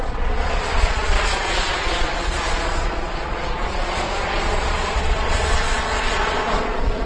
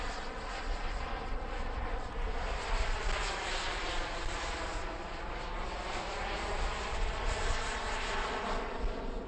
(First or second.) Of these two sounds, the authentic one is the second